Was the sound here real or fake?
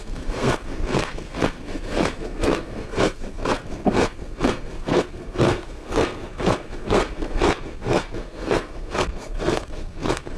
fake